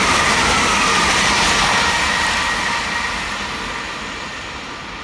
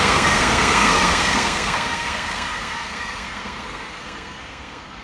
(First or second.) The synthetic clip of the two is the second